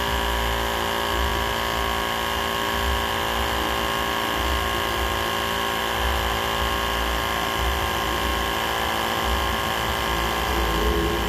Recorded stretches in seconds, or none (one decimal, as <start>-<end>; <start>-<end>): 0.0-11.3